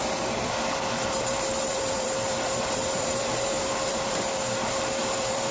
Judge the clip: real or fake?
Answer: fake